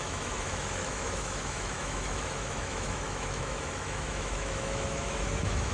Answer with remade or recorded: remade